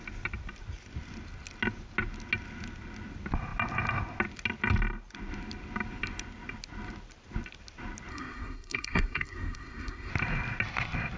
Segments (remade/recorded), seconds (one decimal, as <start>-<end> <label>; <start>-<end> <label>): 0.0-8.1 recorded; 8.1-10.1 remade; 10.1-11.2 recorded